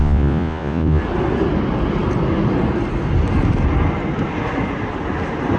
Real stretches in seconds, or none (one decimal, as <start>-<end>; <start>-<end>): 1.0-5.6